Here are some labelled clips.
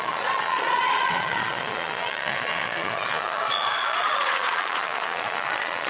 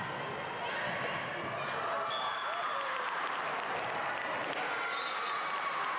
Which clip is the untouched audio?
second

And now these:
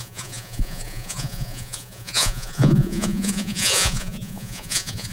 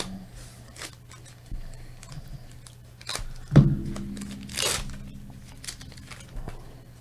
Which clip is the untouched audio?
second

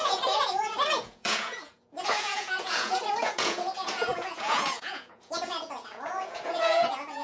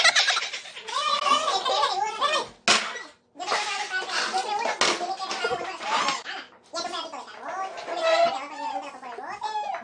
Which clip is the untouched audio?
second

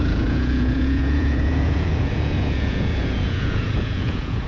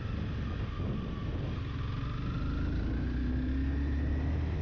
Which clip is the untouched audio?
second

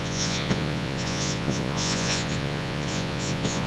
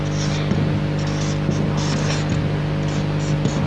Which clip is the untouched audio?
second